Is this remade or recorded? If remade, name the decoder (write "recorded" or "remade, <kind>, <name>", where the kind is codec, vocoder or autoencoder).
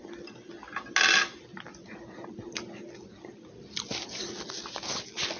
recorded